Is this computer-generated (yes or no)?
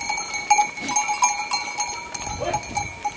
no